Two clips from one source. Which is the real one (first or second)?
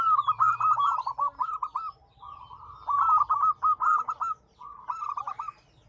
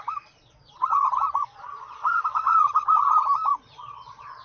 first